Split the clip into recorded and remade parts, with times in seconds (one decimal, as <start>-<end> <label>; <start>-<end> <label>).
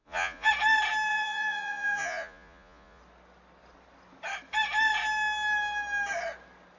0.0-0.5 remade; 0.5-1.1 recorded; 1.1-3.0 remade; 3.0-6.8 recorded